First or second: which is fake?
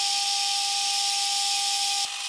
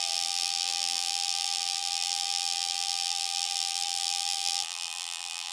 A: second